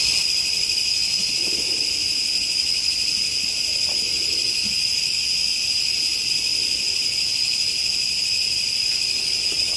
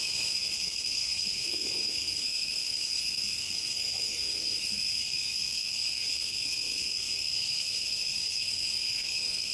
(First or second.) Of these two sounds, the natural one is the first